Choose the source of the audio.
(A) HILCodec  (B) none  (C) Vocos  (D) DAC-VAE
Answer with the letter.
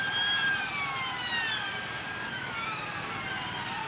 B